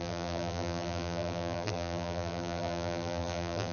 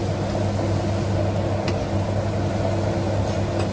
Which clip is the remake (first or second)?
first